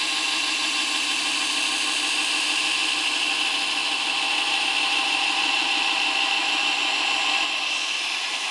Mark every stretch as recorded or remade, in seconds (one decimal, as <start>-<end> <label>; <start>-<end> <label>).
0.0-8.5 recorded